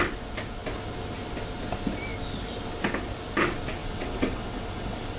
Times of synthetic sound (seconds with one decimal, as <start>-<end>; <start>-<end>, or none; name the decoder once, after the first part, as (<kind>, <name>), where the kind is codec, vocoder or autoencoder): 3.8-5.2 (vocoder, WaveNeXt)